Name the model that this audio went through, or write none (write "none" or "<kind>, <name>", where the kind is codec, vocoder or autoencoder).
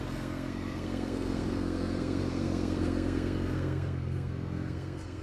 codec, SNAC